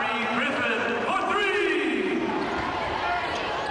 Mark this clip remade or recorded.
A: remade